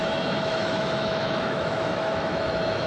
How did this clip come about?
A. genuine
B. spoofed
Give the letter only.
B